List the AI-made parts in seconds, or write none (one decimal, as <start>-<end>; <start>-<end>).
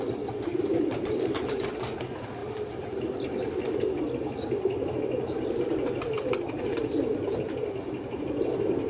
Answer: 0.5-1.1; 2.4-4.9